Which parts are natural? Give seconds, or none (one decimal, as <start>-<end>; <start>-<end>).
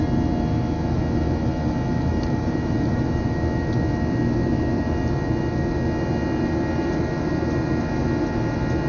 0.0-2.1; 3.3-8.9